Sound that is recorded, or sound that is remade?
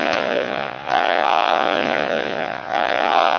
remade